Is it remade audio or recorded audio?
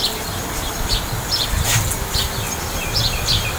recorded